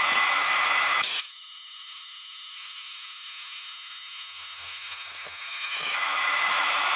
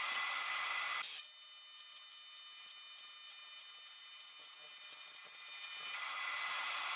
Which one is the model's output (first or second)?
first